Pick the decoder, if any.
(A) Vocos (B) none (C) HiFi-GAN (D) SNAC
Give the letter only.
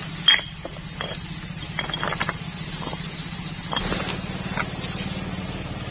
B